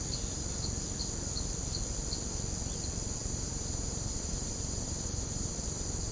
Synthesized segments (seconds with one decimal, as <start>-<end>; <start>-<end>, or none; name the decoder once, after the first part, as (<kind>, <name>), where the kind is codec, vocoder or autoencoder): 3.2-5.5 (vocoder, BigVGAN v2)